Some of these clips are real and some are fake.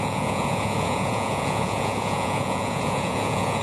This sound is fake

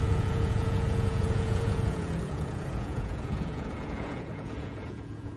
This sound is fake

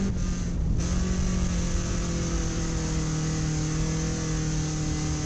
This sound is real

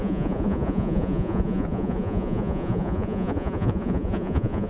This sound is fake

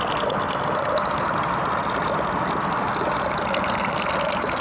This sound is real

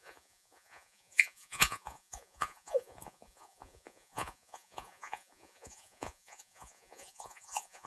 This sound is fake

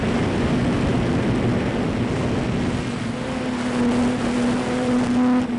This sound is real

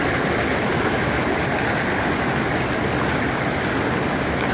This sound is real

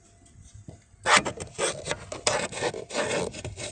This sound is real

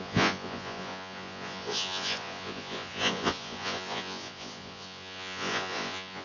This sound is fake